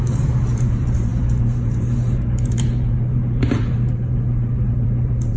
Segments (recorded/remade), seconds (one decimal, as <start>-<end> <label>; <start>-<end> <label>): 0.0-5.4 remade